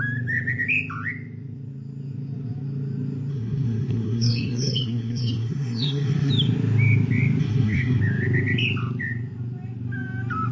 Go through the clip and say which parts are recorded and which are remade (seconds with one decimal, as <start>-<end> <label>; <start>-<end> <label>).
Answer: 0.0-3.3 recorded; 3.3-6.3 remade; 6.3-7.4 recorded; 7.4-8.0 remade; 8.0-10.5 recorded